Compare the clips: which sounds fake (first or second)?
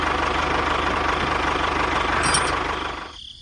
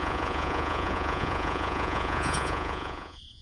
second